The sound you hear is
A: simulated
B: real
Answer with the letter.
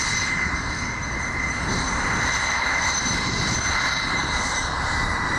A